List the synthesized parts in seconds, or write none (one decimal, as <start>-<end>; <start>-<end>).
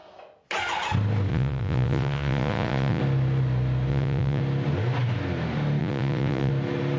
1.3-3.0; 3.9-4.4; 5.8-6.5